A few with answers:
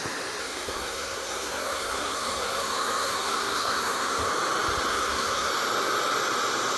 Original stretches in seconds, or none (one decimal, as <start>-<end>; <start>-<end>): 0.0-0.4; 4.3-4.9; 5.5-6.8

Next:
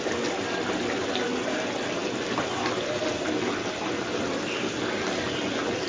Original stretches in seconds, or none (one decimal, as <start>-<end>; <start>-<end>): 0.0-5.9

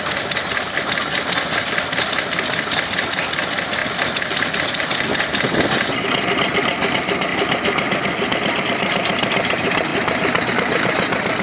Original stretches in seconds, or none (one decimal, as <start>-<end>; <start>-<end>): 0.0-11.4

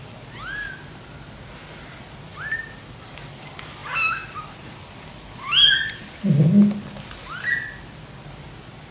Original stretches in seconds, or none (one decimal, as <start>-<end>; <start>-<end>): 0.0-8.9

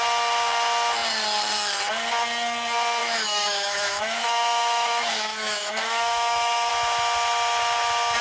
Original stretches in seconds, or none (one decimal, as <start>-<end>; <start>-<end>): 0.0-3.0; 6.7-8.2

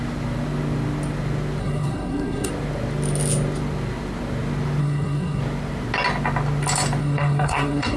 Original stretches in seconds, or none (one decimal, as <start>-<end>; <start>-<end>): 0.0-1.6; 2.5-4.8; 5.4-7.0

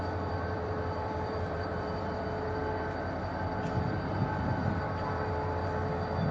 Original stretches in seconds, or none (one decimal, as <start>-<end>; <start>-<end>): 2.6-6.3

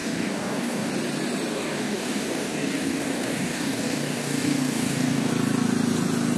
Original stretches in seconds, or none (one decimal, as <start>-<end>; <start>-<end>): 0.9-1.5; 5.3-6.4